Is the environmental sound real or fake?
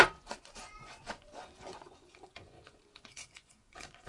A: fake